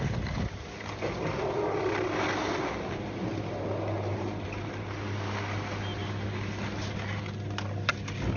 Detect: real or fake real